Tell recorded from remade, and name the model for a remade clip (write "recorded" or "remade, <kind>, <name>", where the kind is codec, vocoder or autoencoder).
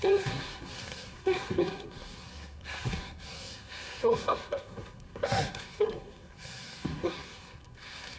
remade, codec, SNAC